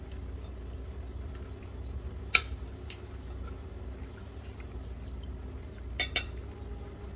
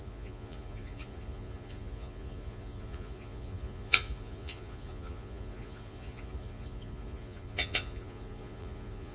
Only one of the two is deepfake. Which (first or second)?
second